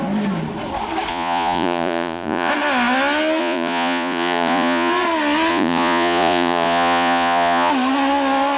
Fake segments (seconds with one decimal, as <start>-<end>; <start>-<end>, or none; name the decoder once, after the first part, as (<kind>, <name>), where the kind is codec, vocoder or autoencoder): 1.1-2.5 (vocoder, Vocos); 3.4-4.9; 5.5-7.7